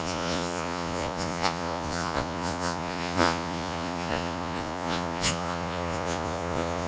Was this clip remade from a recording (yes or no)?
yes